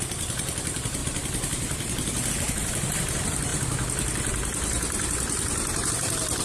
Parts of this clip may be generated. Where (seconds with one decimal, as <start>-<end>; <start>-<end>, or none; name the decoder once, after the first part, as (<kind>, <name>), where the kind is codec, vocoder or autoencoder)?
0.0-3.5 (vocoder, BigVGAN v2); 5.9-6.4